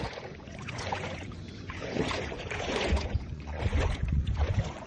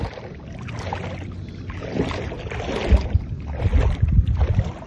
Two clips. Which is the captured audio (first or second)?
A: second